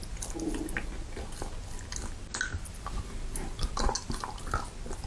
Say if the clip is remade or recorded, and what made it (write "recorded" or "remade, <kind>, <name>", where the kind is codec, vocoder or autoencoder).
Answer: recorded